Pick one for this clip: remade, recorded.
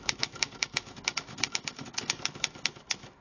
remade